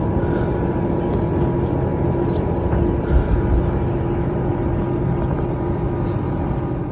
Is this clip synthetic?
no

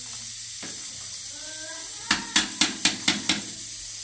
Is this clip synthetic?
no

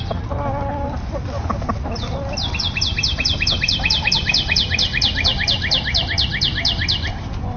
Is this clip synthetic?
no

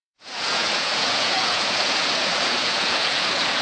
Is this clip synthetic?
yes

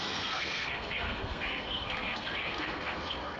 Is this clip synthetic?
yes